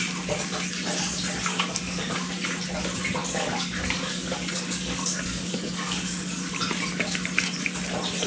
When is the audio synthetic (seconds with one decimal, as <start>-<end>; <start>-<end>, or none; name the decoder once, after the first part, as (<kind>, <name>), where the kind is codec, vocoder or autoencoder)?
1.5-2.3 (codec, DAC); 3.2-6.5